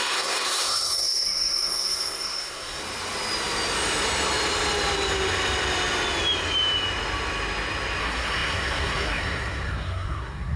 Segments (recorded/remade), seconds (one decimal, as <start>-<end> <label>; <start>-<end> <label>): 0.0-2.8 remade; 2.8-8.0 recorded; 8.0-10.6 remade